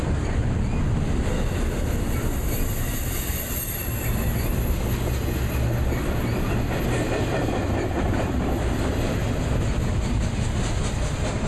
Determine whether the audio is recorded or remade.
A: recorded